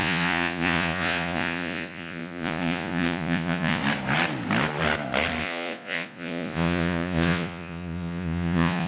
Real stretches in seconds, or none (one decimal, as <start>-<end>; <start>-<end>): 3.8-5.4